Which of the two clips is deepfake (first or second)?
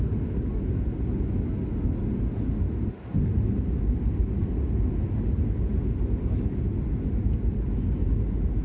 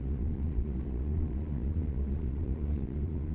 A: second